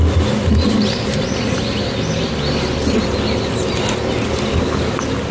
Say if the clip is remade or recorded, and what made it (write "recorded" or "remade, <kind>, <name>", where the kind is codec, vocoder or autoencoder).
recorded